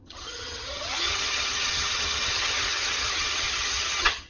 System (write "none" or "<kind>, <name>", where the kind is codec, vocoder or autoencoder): vocoder, HiFi-GAN